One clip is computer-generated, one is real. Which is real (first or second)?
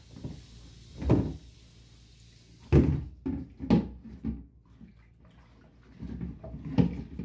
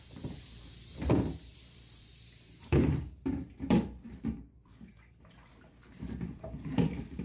first